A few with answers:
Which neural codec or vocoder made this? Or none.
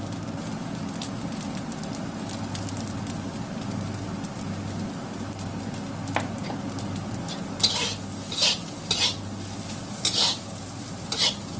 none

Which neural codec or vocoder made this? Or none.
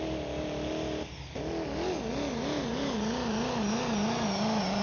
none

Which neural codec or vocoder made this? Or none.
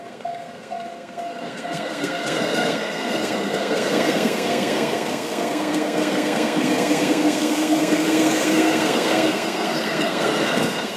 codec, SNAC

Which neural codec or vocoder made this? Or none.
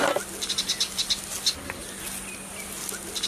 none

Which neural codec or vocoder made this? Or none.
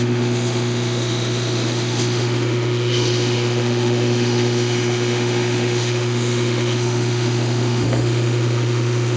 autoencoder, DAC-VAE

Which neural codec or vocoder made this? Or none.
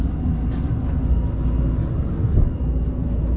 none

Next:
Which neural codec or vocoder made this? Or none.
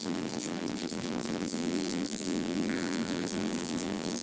vocoder, BigVGAN v2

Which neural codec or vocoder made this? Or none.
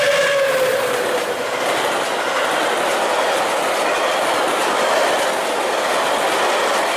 none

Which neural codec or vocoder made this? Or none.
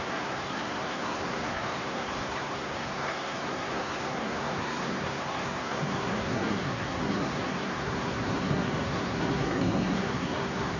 codec, SNAC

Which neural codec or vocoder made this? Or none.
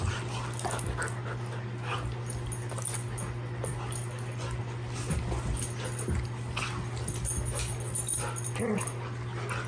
none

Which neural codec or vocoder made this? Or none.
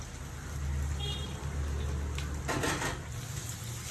none